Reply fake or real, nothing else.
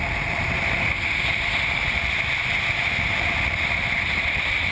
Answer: real